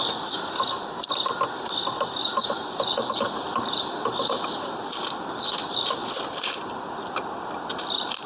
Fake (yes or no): no